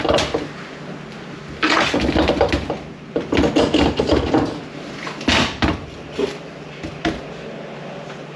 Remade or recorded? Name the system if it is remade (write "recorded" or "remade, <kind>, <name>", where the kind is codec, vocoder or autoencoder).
recorded